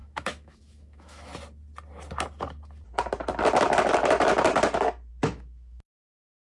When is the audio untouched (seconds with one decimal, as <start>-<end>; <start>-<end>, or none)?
1.3-5.1